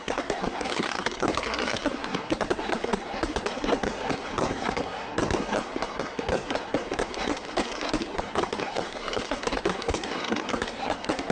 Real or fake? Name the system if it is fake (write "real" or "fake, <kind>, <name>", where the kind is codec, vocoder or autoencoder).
fake, codec, SNAC